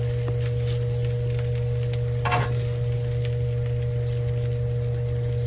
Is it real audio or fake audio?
real